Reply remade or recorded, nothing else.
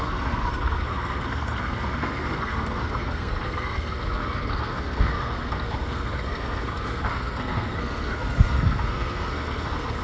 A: remade